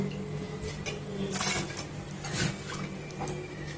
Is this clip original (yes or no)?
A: yes